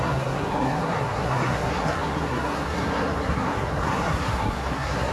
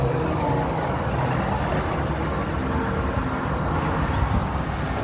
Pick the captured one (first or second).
second